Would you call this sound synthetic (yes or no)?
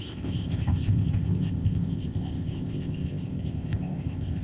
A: yes